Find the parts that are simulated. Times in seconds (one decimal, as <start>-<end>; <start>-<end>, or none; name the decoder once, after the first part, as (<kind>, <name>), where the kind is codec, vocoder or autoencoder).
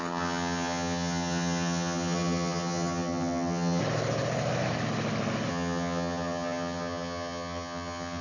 0.0-3.8 (vocoder, HiFi-GAN); 5.5-8.2